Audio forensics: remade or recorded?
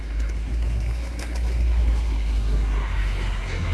remade